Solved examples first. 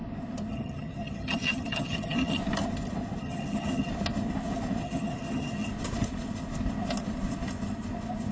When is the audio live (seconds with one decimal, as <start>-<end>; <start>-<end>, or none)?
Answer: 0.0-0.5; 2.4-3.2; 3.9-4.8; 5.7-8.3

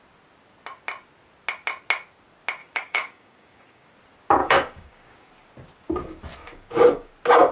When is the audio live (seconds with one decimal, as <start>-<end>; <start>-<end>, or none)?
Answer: 0.0-2.6; 3.9-4.4; 5.3-6.4; 7.1-7.5

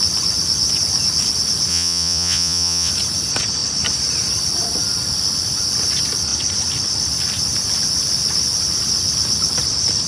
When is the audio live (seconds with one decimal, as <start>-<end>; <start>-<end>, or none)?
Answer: 0.0-1.7; 2.9-10.1

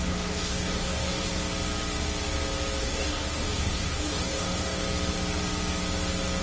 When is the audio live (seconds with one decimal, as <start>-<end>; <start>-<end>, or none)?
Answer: 1.3-2.8; 4.8-6.4